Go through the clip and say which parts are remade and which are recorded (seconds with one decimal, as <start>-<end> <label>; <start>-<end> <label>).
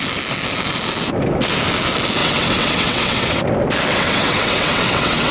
0.0-2.2 recorded; 2.2-3.4 remade; 3.4-3.9 recorded; 3.9-5.3 remade